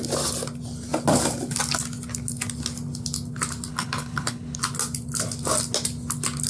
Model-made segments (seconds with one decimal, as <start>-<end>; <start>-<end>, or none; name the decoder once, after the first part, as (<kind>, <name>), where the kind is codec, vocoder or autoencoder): 3.7-4.6 (codec, HILCodec)